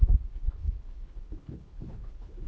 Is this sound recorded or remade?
remade